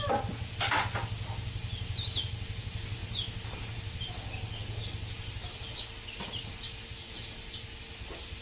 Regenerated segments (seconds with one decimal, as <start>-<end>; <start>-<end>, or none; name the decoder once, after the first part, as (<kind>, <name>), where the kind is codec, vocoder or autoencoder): none